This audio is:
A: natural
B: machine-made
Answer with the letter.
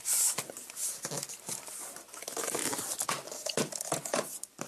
A